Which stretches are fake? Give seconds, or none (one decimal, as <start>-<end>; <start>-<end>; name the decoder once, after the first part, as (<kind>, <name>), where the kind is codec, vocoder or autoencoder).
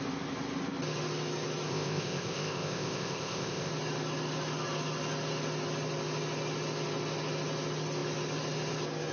1.7-3.7 (codec, ZipCodec)